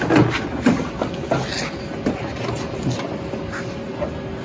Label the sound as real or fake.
real